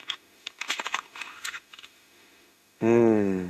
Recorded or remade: remade